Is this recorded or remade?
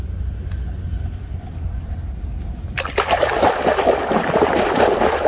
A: recorded